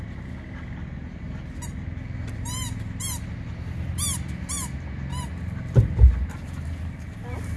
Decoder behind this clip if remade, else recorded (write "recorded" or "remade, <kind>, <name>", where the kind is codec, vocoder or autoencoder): recorded